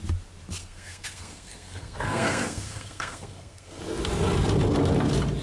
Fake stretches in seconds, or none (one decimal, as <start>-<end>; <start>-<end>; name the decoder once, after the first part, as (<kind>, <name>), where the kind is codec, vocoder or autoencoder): 0.6-3.8 (codec, SNAC)